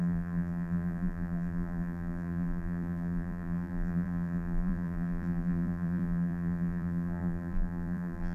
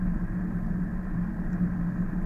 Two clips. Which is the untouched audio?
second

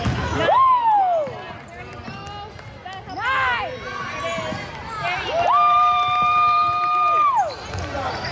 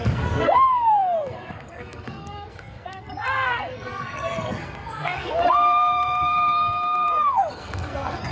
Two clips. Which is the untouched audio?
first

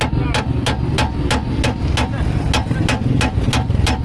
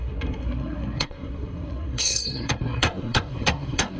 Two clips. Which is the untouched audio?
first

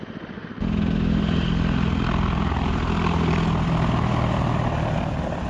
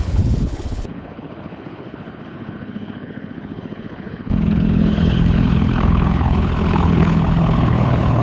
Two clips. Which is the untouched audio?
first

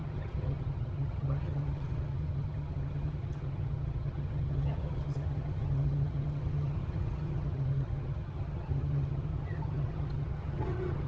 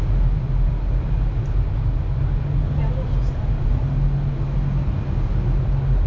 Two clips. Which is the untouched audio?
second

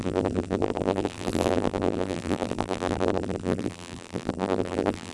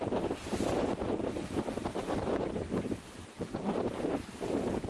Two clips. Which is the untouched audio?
second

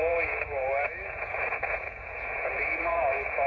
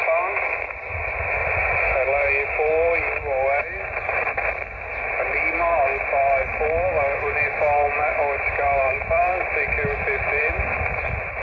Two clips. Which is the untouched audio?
second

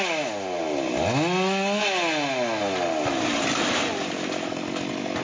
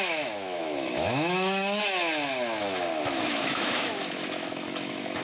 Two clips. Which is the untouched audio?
first